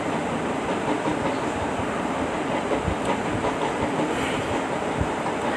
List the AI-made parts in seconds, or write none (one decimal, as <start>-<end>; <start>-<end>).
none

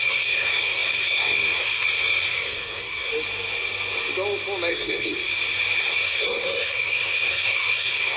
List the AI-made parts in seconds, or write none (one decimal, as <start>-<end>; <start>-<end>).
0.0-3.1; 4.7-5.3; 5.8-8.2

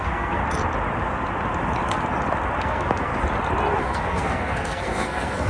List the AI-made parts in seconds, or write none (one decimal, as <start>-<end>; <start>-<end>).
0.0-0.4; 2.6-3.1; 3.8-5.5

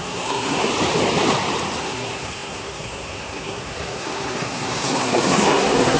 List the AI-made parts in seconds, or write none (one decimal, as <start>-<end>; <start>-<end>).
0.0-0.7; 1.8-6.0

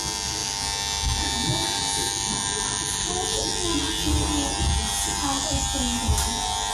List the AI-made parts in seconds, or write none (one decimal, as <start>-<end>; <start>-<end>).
none

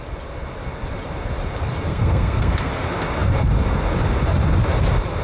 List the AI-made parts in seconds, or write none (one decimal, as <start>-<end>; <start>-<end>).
1.9-2.7